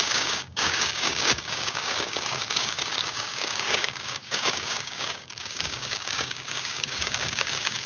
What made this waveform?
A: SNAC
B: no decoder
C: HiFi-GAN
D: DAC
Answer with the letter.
D